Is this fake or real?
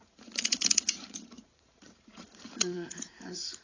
fake